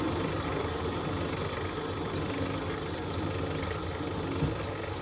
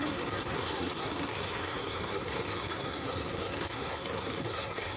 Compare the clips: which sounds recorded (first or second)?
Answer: first